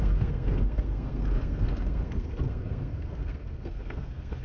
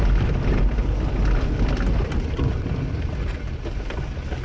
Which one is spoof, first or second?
first